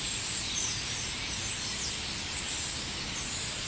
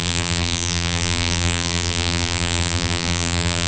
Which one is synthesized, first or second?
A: second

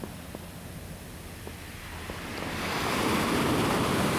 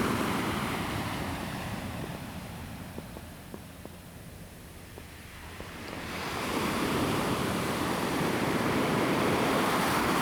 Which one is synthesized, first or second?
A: second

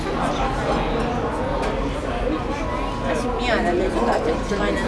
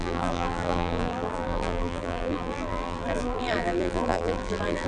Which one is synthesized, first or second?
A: second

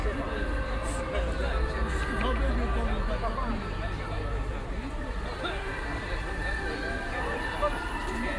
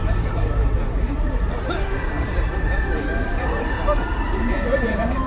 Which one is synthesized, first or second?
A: second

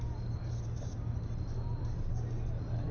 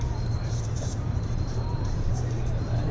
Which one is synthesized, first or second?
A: second